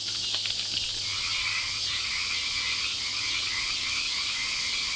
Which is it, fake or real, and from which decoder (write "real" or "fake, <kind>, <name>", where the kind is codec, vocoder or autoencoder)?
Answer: real